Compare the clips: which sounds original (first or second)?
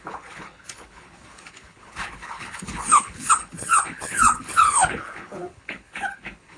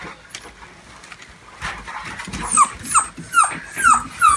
second